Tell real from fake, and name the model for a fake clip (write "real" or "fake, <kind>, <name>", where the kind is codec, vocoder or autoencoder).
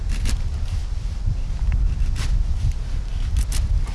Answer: real